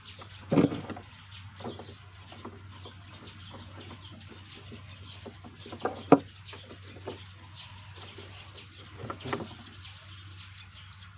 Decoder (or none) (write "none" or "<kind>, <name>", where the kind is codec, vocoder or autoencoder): none